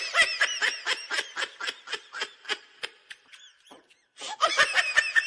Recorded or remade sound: remade